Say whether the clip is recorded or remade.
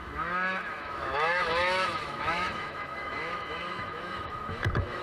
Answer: remade